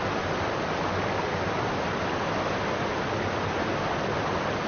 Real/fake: real